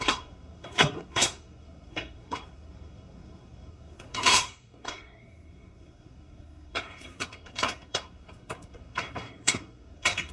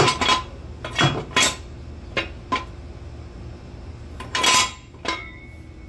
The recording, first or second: second